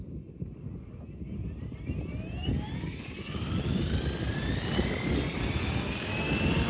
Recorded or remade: recorded